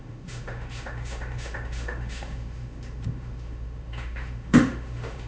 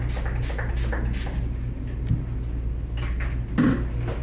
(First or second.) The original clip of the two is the second